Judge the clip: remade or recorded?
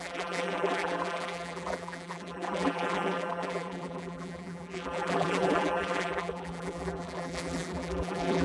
remade